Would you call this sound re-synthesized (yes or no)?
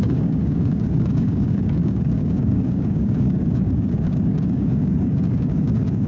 yes